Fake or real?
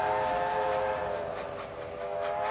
real